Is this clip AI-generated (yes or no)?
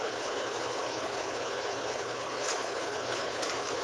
yes